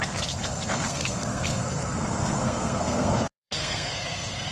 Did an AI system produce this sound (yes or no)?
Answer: yes